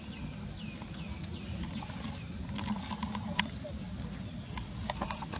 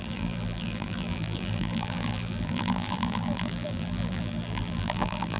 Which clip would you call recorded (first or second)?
first